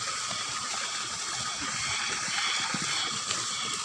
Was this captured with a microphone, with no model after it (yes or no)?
yes